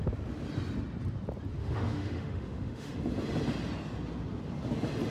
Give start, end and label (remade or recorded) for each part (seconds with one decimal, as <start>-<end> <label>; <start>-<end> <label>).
0.0-1.6 recorded; 1.6-3.0 remade; 3.0-5.1 recorded